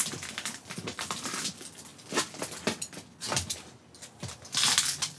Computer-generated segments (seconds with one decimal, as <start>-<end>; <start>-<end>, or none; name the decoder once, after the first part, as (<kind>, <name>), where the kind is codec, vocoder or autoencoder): none

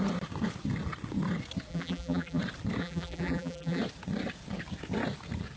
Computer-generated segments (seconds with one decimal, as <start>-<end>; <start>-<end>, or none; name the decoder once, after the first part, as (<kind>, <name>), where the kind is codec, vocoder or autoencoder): 1.7-2.4 (vocoder, BigVGAN v2); 2.8-3.8

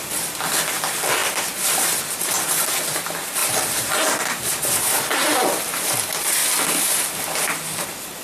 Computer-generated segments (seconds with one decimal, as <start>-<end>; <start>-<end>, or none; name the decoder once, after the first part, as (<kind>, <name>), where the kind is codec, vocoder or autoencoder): 1.2-2.0 (vocoder, BigVGAN v2); 3.4-5.0